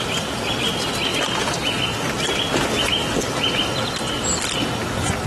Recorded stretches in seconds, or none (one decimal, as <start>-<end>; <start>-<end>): 0.0-1.1; 1.8-3.0; 3.6-5.3